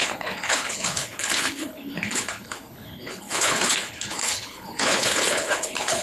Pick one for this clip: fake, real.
fake